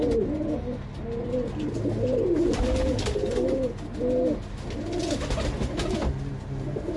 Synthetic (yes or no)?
no